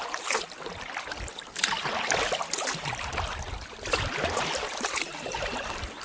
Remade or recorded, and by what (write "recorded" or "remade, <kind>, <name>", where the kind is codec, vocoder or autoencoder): recorded